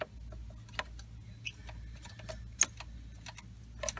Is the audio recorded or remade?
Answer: recorded